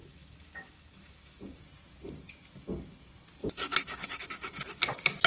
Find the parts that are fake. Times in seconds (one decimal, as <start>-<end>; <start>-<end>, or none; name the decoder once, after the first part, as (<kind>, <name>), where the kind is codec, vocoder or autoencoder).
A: 0.0-1.6 (autoencoder, DAC-VAE); 3.4-4.8